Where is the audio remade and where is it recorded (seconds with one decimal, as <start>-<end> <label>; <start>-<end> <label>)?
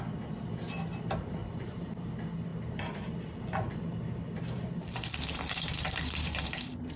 0.0-1.4 recorded; 1.4-2.1 remade; 2.1-2.5 recorded; 2.5-7.0 remade